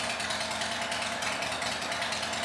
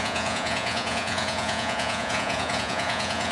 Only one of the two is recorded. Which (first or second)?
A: first